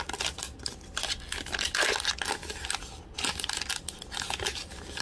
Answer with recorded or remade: recorded